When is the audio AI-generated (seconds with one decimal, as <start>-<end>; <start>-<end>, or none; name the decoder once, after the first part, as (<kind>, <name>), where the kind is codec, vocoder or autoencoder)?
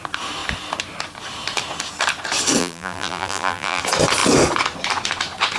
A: 2.6-3.8 (vocoder, BigVGAN v2)